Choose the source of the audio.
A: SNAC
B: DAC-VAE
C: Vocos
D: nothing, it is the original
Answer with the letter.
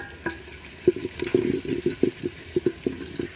D